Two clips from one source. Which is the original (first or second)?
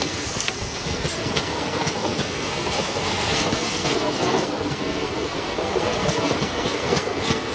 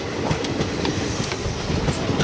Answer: second